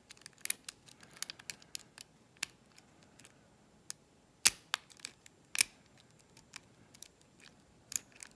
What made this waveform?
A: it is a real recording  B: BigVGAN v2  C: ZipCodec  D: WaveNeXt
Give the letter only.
A